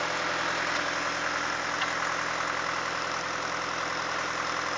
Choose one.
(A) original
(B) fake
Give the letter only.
A